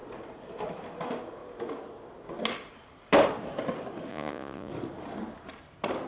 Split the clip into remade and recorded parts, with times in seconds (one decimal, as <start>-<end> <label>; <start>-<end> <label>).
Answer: 0.0-4.1 recorded; 4.1-4.7 remade; 4.7-6.1 recorded